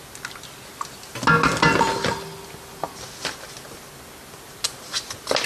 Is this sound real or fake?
real